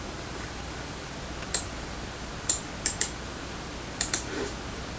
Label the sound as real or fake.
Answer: fake